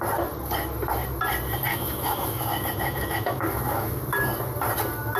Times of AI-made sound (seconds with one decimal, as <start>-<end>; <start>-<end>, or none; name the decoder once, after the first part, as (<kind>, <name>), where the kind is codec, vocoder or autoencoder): 1.7-4.0 (autoencoder, DAC-VAE)